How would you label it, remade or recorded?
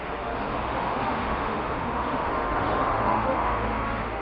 remade